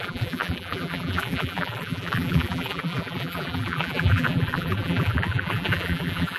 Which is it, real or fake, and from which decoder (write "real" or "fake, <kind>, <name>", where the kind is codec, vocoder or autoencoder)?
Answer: fake, vocoder, BigVGAN v2